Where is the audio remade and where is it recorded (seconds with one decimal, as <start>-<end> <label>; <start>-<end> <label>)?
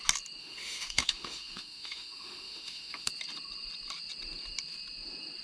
0.0-0.4 recorded; 0.4-3.1 remade; 3.1-5.4 recorded